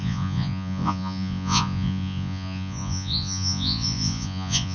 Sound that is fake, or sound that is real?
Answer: fake